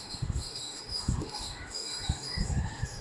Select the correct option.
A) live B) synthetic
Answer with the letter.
B